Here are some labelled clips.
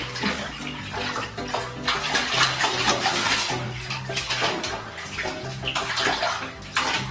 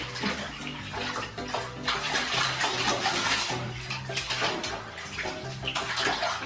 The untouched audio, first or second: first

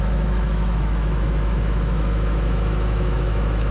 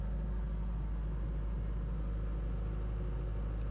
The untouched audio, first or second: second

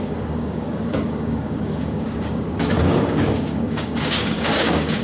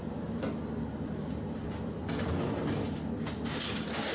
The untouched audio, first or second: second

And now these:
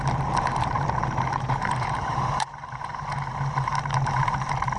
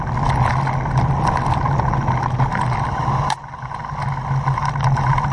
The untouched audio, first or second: second